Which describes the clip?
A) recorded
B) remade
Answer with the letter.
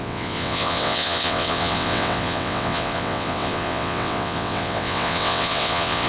B